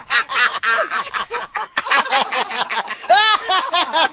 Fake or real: fake